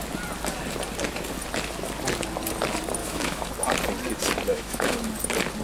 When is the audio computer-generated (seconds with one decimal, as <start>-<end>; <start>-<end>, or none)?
3.0-3.5; 4.5-5.0